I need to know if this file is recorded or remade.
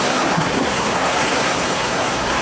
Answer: remade